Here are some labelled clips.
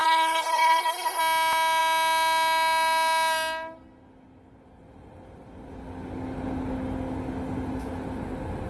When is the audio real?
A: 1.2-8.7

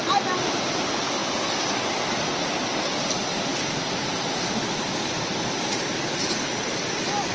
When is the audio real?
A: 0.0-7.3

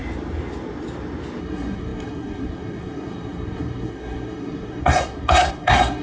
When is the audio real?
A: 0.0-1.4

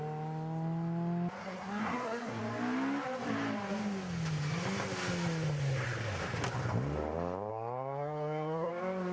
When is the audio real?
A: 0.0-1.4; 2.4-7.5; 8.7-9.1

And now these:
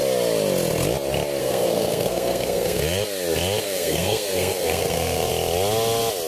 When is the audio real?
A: 0.0-1.4; 2.8-3.6; 5.3-6.3

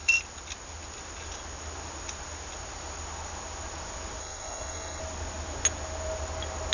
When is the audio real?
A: 0.0-4.2; 5.0-6.7

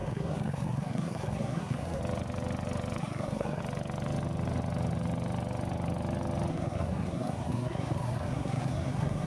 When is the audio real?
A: 2.0-3.0; 3.6-6.5